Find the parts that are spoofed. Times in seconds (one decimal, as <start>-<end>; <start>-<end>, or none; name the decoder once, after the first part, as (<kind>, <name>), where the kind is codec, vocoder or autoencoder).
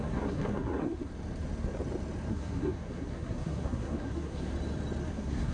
0.0-1.1 (codec, SNAC); 2.3-4.5; 5.1-5.5